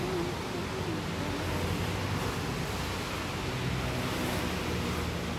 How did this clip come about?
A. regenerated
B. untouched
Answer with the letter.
B